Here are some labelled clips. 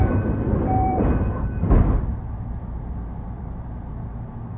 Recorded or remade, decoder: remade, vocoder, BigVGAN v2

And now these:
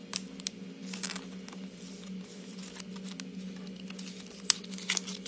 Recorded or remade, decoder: recorded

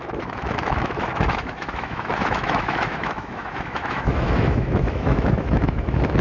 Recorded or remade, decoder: remade, autoencoder, DAC-VAE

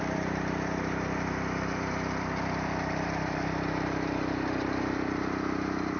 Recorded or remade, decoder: remade, vocoder, BigVGAN v2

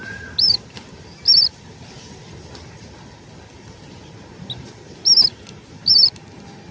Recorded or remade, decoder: recorded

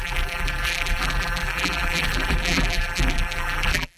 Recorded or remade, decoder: remade, vocoder, BigVGAN v2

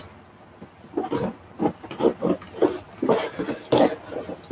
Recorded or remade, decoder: recorded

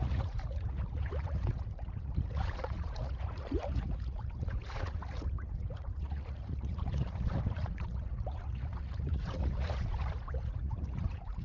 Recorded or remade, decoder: remade, vocoder, Vocos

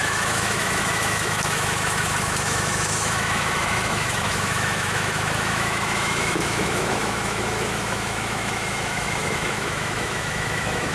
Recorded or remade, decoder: remade, autoencoder, DAC-VAE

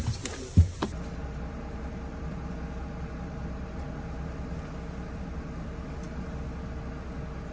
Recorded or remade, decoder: recorded